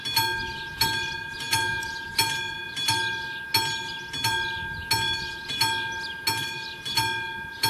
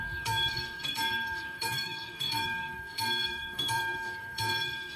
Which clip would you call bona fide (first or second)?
first